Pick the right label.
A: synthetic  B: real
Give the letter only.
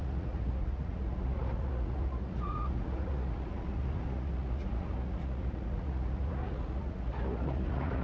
A